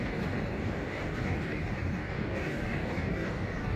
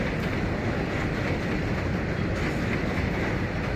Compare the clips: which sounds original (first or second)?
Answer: second